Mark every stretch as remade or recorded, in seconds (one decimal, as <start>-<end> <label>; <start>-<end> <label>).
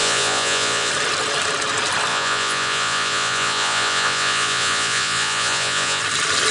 0.0-0.9 remade; 0.9-2.1 recorded; 2.1-6.0 remade; 6.0-6.5 recorded